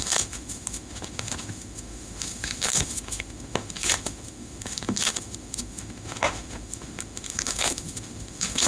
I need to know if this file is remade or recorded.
remade